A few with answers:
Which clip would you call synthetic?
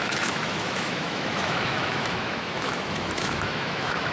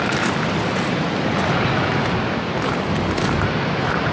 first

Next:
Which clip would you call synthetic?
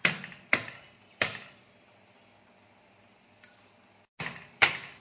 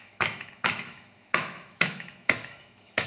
second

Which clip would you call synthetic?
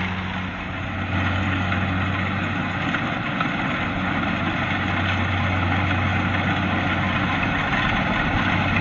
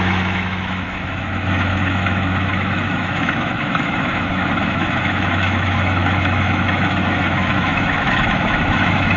second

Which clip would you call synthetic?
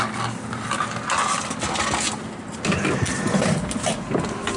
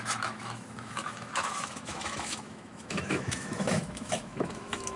second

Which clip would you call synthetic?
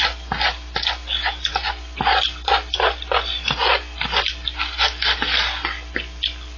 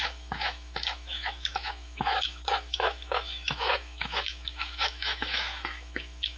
second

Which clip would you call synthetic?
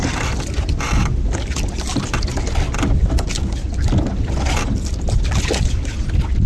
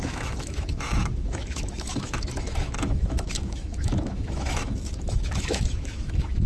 second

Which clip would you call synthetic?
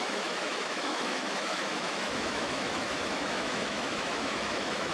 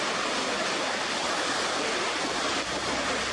first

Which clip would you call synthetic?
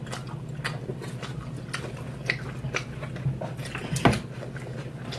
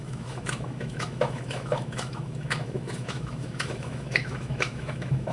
second